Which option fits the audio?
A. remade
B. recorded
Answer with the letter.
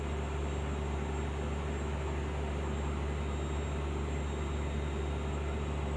B